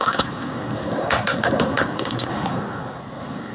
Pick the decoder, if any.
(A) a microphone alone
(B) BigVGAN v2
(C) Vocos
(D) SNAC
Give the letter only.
D